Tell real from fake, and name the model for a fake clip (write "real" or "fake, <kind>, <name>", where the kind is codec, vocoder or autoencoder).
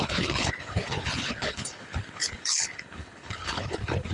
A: fake, codec, HILCodec